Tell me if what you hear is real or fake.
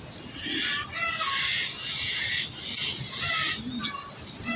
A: real